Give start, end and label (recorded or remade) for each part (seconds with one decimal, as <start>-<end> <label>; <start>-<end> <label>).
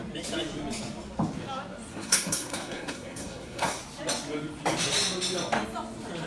0.0-1.9 recorded; 1.9-3.8 remade; 3.8-6.3 recorded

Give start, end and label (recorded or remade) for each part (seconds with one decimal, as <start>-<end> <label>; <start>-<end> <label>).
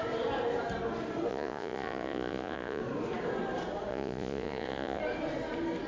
0.0-1.3 recorded; 1.3-2.8 remade; 2.8-3.9 recorded; 3.9-5.0 remade; 5.0-5.9 recorded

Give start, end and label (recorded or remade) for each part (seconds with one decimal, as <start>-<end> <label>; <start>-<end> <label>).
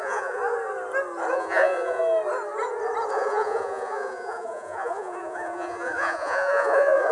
0.0-0.4 remade; 0.4-1.3 recorded; 1.3-2.0 remade; 2.0-3.1 recorded; 3.1-7.1 remade